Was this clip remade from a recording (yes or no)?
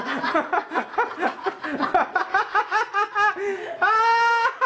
no